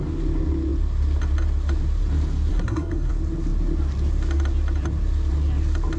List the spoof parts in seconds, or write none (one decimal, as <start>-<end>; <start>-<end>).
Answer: 2.5-3.1